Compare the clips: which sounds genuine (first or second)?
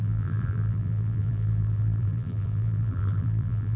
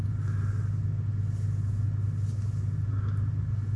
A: second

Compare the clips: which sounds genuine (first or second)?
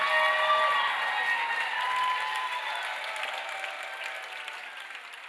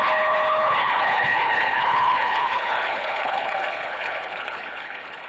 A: first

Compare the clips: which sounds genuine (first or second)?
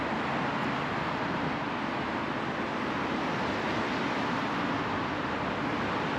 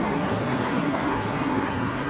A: first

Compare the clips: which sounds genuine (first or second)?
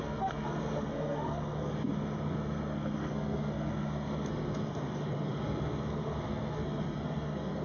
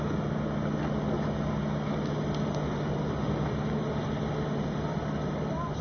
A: second